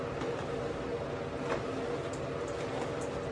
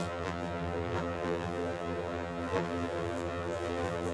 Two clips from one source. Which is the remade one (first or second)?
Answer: second